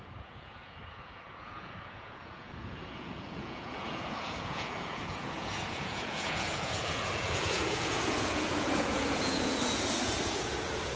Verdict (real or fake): fake